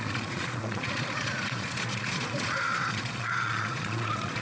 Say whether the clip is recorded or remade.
remade